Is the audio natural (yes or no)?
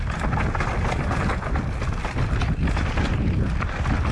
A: yes